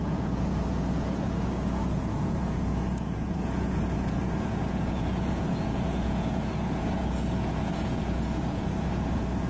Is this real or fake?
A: fake